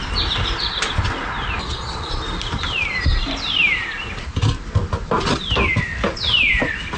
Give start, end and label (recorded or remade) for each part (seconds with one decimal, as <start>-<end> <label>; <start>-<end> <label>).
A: 0.0-1.6 recorded; 1.6-2.2 remade; 2.2-7.0 recorded